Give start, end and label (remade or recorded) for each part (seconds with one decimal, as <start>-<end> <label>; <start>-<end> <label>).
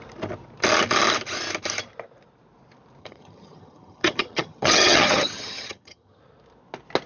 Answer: 0.0-3.0 recorded; 3.0-6.2 remade; 6.2-7.1 recorded